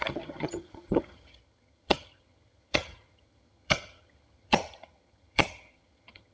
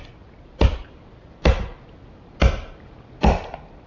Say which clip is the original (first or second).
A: second